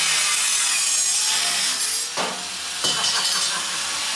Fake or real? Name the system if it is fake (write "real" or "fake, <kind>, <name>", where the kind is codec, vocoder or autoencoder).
real